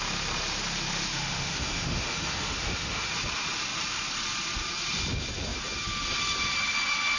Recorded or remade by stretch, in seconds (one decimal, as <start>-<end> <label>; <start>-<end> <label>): 0.0-1.1 recorded; 1.1-3.1 remade; 3.1-7.2 recorded